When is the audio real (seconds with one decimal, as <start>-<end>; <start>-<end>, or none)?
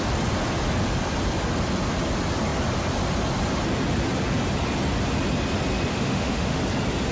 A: 0.0-5.9; 6.6-7.1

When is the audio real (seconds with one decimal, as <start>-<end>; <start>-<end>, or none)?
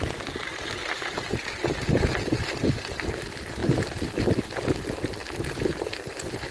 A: 0.0-6.5